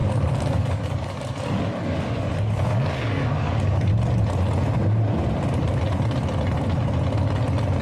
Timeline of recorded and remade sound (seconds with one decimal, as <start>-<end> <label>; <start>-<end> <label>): 0.0-3.9 remade; 3.9-7.8 recorded